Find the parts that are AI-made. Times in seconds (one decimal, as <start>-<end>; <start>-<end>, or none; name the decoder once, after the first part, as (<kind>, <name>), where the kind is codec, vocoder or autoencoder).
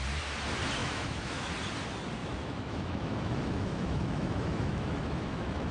0.8-1.5 (autoencoder, DAC-VAE); 2.2-5.7